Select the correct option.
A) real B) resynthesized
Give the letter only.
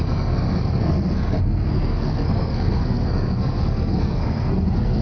B